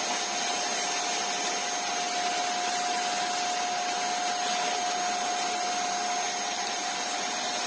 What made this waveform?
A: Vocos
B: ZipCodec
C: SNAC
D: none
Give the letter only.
D